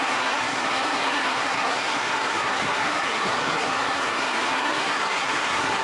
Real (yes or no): no